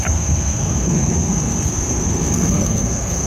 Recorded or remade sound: remade